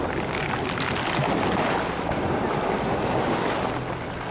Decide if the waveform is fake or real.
real